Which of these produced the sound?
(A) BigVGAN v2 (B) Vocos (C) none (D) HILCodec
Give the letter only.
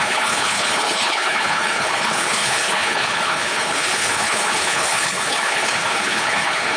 D